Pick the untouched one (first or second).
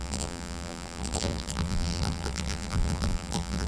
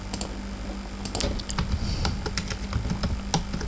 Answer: second